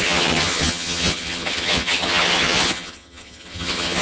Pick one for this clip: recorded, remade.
remade